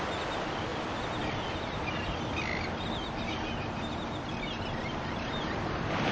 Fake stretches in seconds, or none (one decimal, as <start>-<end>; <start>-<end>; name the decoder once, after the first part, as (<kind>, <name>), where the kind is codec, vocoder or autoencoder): none